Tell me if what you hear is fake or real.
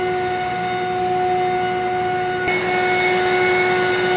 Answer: real